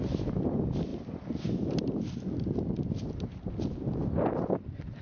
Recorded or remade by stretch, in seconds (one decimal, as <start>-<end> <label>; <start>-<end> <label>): 0.0-5.0 recorded

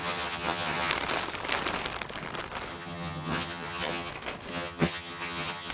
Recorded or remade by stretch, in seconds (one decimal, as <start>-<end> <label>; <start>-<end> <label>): 0.0-0.9 remade; 0.9-2.7 recorded; 2.7-4.1 remade; 4.1-4.5 recorded; 4.5-5.7 remade

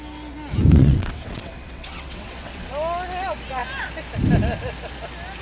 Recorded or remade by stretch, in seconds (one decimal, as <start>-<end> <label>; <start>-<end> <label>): 0.0-0.7 recorded; 0.7-2.7 remade; 2.7-5.4 recorded

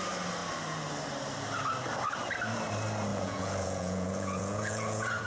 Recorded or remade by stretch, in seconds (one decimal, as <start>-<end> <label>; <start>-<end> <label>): 0.0-3.1 recorded; 3.1-5.3 remade

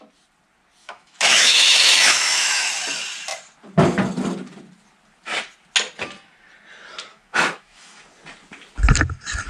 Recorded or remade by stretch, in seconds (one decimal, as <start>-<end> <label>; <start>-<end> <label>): 0.0-0.8 recorded; 0.8-2.7 remade; 2.7-7.1 recorded; 7.1-8.0 remade; 8.0-9.5 recorded

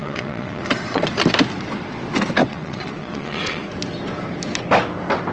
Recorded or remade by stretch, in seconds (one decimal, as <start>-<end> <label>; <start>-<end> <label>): 0.0-1.1 remade; 1.1-2.4 recorded; 2.4-3.7 remade; 3.7-5.3 recorded